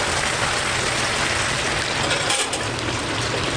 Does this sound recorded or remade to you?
recorded